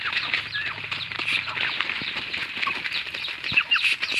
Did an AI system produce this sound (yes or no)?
yes